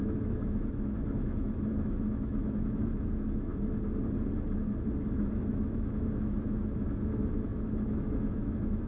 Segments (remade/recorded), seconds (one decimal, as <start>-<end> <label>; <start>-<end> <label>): 0.0-3.5 remade; 3.5-5.0 recorded; 5.0-8.9 remade